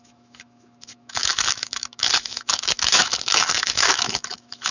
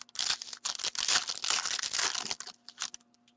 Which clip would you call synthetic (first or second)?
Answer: first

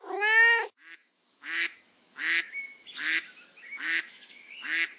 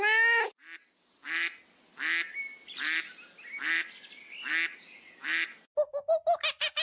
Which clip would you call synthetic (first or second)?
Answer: first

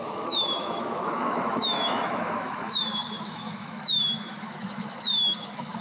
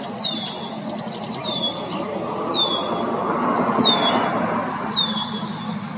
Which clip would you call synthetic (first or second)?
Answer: first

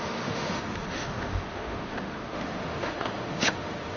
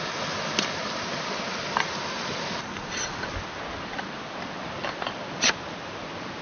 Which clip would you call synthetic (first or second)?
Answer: first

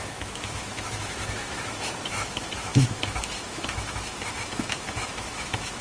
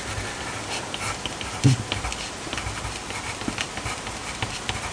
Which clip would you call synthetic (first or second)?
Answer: first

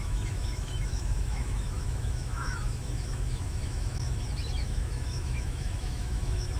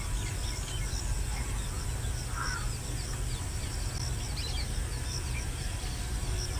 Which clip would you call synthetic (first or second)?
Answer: first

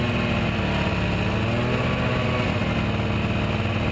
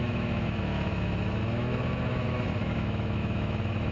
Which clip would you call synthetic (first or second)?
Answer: second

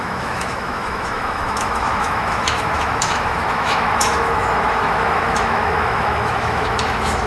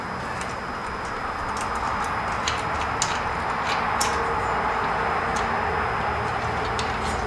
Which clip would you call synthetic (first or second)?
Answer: first